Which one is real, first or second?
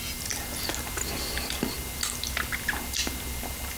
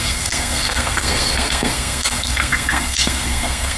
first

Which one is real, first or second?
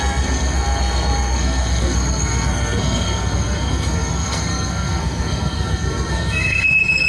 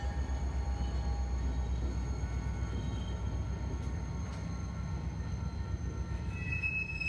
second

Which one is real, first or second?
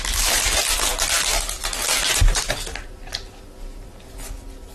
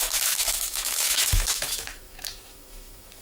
first